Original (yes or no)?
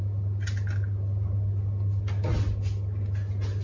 yes